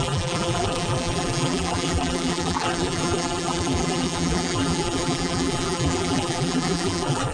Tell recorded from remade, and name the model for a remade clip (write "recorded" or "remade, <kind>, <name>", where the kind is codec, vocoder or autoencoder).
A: remade, vocoder, BigVGAN v2